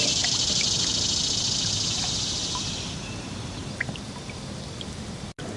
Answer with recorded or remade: recorded